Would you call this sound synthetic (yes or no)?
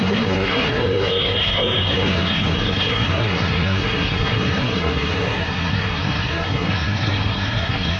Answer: yes